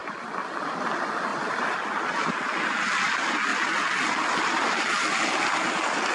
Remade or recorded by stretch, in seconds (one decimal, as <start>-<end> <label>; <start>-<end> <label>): 0.0-6.1 recorded